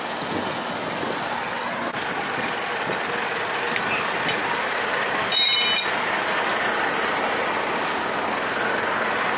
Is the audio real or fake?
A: real